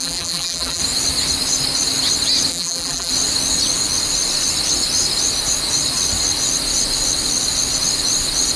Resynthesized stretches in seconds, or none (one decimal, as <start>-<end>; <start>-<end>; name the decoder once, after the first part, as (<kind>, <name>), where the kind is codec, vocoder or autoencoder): 0.0-0.8 (vocoder, BigVGAN v2); 2.5-3.1